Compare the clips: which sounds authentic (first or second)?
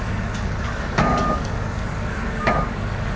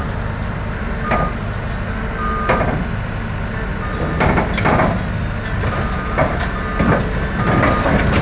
second